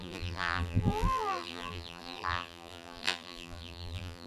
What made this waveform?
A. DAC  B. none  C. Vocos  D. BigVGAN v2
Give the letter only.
D